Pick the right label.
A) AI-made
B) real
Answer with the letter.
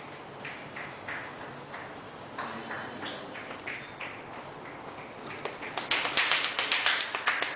B